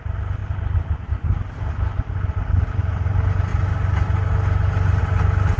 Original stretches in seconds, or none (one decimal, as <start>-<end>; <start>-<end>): 0.0-5.6